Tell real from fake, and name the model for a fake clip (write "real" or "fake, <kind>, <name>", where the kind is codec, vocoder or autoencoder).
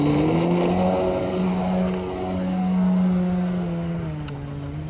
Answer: real